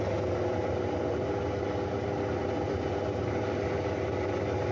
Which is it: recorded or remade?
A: recorded